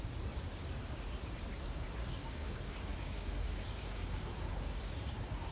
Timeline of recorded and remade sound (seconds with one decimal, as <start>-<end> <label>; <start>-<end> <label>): 0.0-2.0 recorded; 2.0-5.5 remade